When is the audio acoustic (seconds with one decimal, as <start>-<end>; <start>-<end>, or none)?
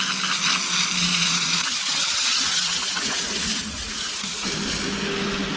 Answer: 0.0-1.1; 4.5-5.6